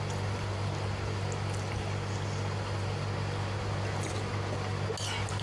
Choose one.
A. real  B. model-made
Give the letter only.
A